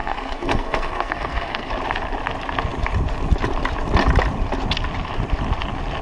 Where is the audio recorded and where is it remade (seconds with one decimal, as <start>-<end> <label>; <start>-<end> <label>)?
0.0-1.7 remade; 1.7-6.0 recorded